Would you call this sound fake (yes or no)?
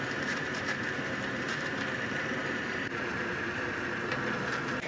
yes